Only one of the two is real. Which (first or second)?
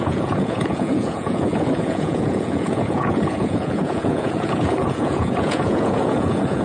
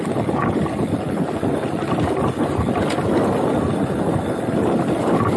second